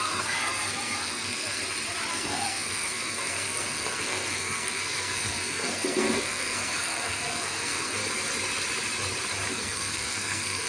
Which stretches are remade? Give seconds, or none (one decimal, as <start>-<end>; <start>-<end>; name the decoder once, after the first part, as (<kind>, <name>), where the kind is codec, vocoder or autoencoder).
0.0-1.6 (codec, SNAC); 2.1-8.0; 9.5-10.7